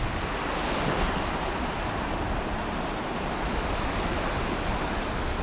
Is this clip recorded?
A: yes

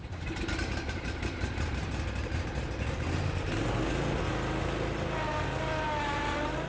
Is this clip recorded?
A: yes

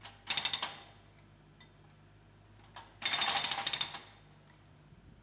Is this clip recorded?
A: yes